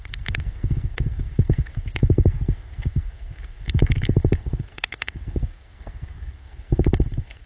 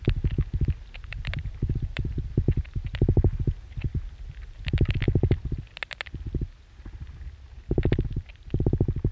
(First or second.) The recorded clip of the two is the second